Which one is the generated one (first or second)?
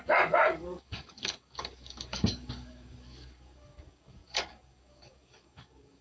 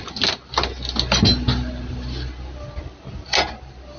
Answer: first